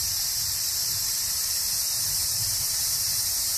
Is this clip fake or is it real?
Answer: real